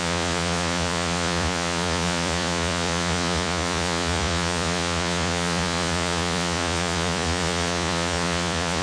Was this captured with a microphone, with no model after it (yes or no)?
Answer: no